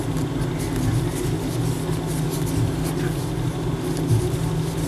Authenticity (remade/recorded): recorded